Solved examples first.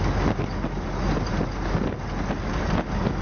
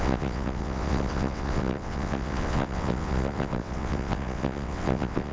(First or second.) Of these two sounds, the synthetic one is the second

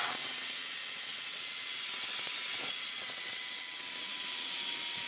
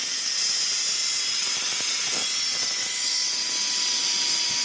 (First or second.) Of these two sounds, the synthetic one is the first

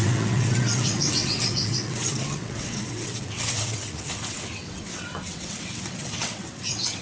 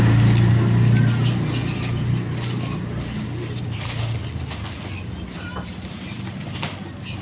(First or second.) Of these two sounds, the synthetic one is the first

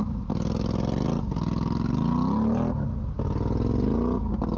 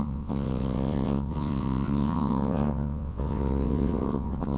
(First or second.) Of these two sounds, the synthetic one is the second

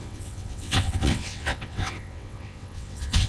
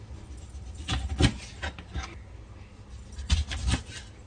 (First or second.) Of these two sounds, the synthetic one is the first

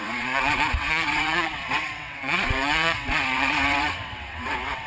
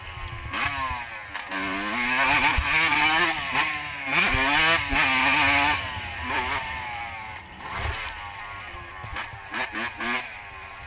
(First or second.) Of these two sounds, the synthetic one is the first